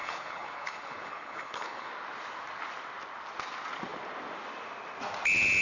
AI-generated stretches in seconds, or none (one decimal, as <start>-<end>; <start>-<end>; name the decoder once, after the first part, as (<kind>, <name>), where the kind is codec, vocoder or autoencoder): 0.0-1.9 (codec, HILCodec)

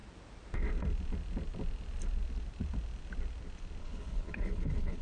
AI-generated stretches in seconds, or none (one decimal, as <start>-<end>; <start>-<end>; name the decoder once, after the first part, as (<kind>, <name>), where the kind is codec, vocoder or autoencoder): 3.8-5.0 (codec, HILCodec)